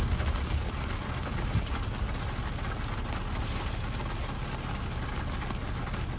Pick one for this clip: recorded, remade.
recorded